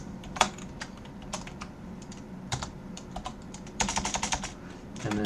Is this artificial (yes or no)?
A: yes